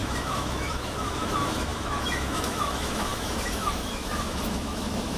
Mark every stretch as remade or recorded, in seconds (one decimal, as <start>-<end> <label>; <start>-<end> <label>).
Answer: 0.0-5.2 remade